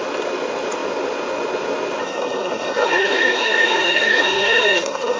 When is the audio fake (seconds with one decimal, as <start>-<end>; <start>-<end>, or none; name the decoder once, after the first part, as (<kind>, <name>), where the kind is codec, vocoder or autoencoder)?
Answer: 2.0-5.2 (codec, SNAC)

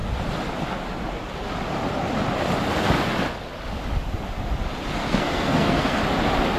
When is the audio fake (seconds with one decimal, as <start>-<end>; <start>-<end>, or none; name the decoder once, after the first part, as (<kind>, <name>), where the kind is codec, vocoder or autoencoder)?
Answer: 5.0-6.0 (codec, SNAC)

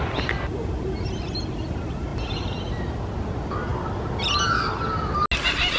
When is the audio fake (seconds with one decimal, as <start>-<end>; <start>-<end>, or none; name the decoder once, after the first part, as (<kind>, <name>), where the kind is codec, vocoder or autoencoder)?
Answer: none

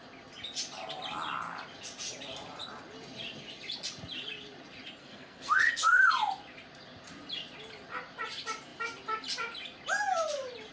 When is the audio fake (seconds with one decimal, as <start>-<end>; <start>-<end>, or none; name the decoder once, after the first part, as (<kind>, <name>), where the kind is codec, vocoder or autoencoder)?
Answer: 5.0-6.1 (codec, SNAC)

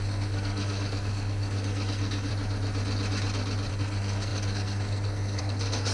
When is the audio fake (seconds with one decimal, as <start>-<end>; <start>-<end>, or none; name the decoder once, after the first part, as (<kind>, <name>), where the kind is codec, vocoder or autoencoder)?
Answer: 0.0-2.3 (codec, SNAC); 3.7-5.9

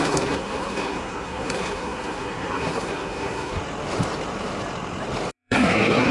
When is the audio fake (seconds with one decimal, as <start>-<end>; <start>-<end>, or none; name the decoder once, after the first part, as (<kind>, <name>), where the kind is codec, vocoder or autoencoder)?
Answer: 0.0-3.6 (codec, SNAC); 5.3-6.1

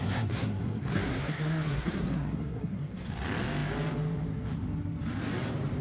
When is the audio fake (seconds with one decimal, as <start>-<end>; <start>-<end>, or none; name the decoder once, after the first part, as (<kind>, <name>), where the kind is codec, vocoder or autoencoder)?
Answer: 0.0-3.1 (codec, SNAC)

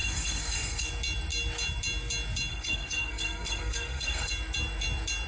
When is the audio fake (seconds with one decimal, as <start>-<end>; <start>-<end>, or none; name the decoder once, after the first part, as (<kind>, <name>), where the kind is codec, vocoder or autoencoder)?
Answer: 0.0-0.9 (codec, SNAC); 2.5-4.3